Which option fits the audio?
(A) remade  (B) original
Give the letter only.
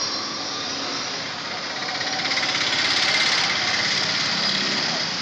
B